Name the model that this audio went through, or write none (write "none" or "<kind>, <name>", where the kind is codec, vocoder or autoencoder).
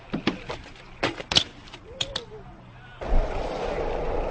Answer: vocoder, BigVGAN v2